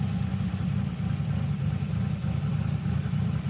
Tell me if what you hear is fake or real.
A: real